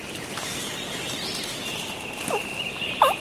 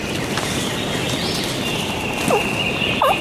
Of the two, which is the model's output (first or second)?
first